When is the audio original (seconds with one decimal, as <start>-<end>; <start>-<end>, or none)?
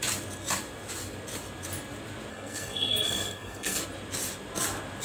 0.0-2.3; 3.8-5.0